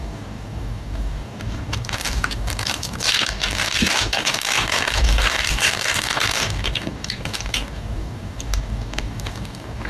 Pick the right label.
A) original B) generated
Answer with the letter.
B